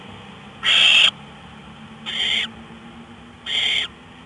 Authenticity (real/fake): real